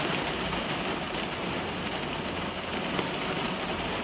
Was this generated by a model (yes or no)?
no